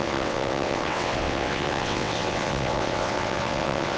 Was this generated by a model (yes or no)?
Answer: yes